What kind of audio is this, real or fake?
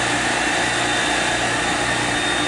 real